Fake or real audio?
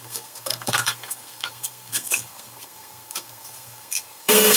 fake